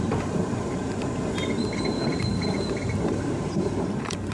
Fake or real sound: fake